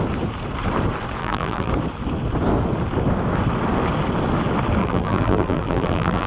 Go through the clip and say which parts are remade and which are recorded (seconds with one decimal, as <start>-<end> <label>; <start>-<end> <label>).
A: 0.0-1.2 recorded; 1.2-1.7 remade; 1.7-4.8 recorded; 4.8-6.3 remade